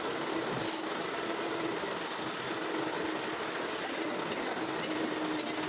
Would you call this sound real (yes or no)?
yes